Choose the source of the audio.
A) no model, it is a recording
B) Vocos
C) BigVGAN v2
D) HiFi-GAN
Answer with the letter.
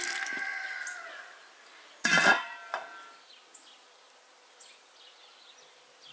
A